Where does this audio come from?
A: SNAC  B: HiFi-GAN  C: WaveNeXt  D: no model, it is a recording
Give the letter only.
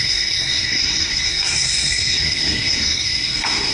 A